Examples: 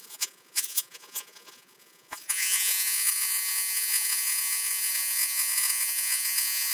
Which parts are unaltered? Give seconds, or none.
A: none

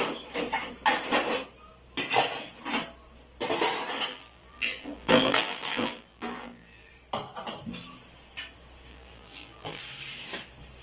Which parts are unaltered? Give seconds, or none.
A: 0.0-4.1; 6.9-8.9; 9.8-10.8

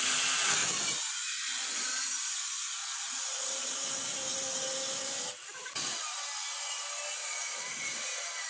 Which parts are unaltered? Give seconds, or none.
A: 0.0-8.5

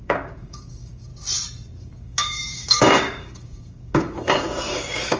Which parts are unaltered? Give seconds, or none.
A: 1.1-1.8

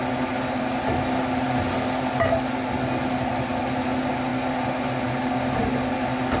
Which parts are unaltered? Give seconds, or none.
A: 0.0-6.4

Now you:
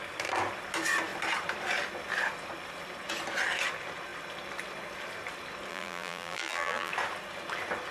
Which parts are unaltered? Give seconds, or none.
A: 0.0-5.7; 6.9-7.9